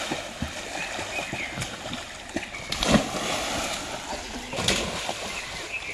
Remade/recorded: recorded